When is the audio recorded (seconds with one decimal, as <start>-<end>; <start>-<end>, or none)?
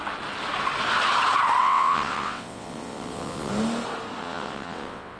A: 0.0-1.6; 3.5-4.2